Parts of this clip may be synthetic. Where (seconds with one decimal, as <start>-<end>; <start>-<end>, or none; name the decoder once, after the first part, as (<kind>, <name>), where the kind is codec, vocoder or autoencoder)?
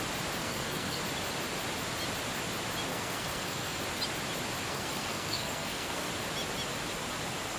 0.4-1.0 (codec, SNAC); 2.9-3.8; 4.7-6.1